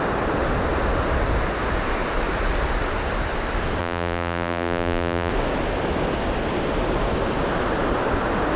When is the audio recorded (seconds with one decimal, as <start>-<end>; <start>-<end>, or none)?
0.0-3.8; 5.3-8.6

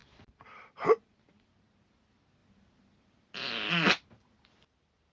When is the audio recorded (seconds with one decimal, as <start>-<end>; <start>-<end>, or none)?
1.5-5.1

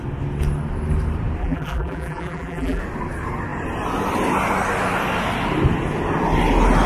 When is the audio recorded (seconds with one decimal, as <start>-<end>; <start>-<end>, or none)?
0.0-1.4; 2.8-6.9